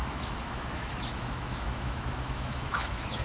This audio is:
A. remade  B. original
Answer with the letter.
A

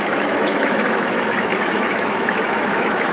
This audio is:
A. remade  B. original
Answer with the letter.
A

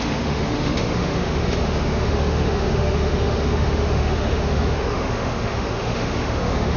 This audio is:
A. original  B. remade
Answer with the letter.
B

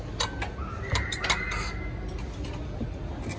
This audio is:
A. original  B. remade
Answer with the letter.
A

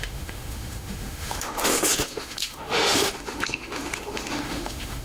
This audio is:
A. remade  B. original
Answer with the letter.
A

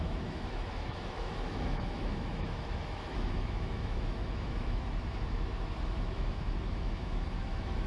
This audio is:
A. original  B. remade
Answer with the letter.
B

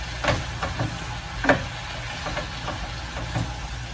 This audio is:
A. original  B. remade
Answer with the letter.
A